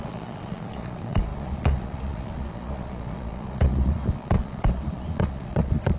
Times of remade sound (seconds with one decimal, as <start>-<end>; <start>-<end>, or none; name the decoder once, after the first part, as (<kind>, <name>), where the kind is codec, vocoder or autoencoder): 0.0-6.0 (vocoder, Vocos)